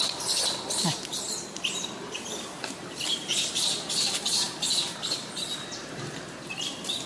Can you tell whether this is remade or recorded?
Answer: remade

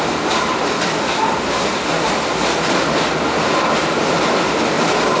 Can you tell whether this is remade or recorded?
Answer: recorded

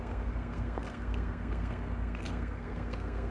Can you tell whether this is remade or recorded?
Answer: remade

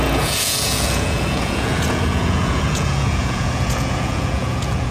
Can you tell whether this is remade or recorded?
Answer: remade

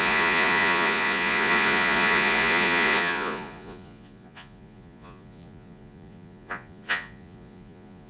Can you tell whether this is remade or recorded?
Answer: remade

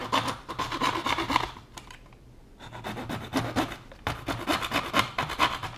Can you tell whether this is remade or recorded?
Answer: recorded